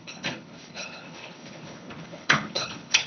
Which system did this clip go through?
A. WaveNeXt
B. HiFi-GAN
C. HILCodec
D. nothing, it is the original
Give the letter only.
C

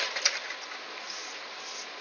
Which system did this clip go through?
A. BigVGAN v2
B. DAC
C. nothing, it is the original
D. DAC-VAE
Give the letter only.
C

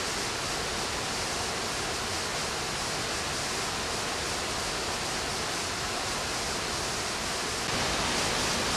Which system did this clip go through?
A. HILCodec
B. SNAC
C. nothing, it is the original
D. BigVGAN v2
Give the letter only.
C